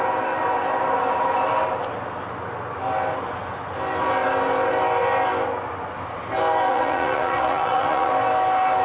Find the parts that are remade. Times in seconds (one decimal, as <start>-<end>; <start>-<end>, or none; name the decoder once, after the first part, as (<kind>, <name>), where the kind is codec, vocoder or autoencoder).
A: 6.7-8.1 (vocoder, Vocos)